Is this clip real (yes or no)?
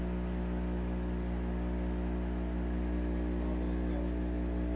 yes